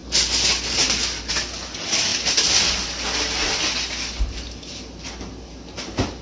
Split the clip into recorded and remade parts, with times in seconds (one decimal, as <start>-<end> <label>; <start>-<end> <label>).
0.0-6.2 recorded